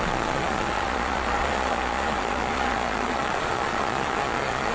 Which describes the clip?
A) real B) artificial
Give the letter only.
B